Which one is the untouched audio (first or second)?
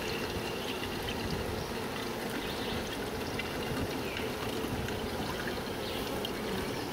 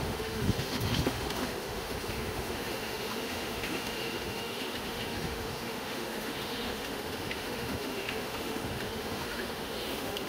first